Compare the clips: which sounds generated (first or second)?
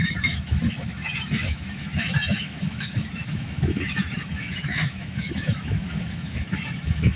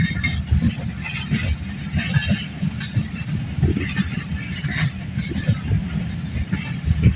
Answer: first